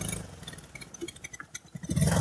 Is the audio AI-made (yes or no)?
no